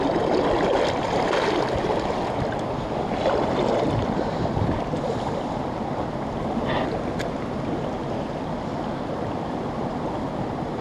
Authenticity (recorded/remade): recorded